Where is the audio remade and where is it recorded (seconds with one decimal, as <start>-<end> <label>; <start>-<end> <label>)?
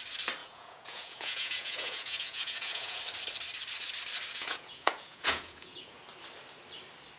0.0-0.4 recorded; 0.4-3.0 remade; 3.0-4.3 recorded; 4.3-6.0 remade; 6.0-7.2 recorded